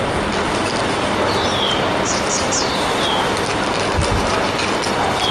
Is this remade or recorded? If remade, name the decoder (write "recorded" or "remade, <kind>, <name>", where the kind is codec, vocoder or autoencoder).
recorded